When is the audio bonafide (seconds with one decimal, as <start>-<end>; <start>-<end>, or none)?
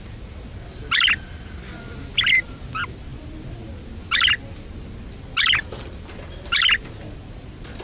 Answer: 0.0-7.8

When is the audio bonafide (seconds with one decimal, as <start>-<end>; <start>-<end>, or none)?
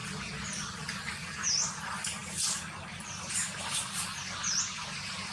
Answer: 0.0-5.3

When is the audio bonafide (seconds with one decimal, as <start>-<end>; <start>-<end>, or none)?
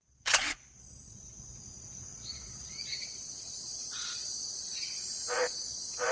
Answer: none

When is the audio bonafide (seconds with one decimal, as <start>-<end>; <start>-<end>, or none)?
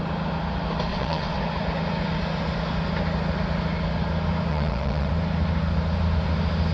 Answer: 0.0-0.9; 1.4-4.5; 5.1-6.7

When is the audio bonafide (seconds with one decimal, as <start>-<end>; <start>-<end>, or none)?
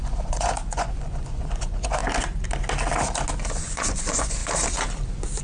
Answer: 2.0-3.5; 4.4-5.4